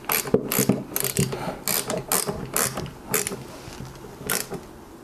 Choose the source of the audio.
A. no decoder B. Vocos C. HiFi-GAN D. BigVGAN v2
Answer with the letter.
A